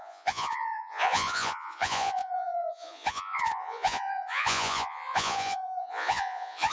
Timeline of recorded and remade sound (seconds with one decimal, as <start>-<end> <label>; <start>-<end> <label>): 0.0-6.7 remade